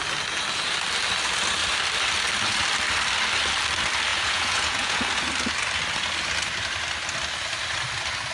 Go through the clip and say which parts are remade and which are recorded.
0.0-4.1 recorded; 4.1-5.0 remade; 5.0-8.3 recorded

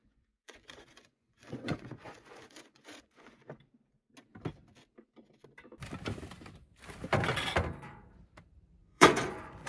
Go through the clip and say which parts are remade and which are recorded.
0.0-3.5 remade; 3.5-8.8 recorded; 8.8-9.7 remade

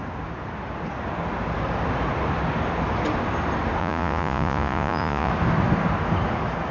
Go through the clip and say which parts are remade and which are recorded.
0.0-3.8 recorded; 3.8-5.3 remade; 5.3-6.7 recorded